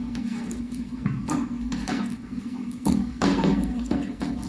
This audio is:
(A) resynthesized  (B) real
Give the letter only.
A